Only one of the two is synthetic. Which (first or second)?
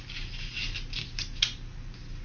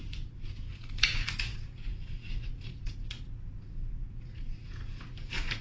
second